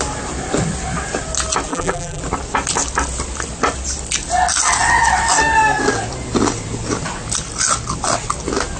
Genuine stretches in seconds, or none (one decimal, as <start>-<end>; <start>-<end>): 0.0-1.7; 2.2-8.8